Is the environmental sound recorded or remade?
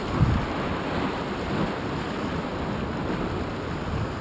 recorded